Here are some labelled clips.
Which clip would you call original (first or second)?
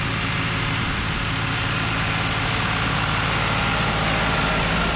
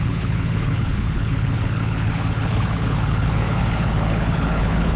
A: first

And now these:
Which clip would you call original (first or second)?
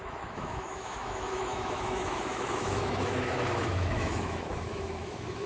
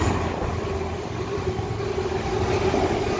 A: second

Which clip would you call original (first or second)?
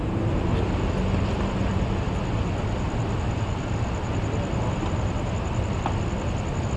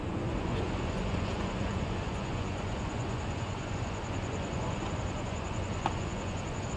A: first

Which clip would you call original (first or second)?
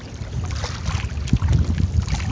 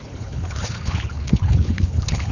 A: first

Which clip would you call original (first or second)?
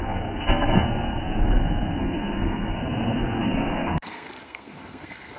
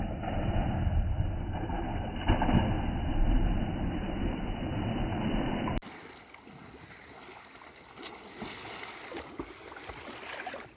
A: second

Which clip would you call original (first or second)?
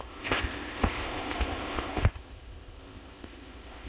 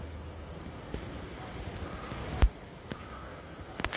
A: second